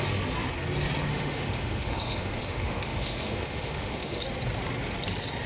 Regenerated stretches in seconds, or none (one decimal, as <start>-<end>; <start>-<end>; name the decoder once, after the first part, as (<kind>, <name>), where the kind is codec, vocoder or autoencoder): 1.1-4.2 (autoencoder, DAC-VAE)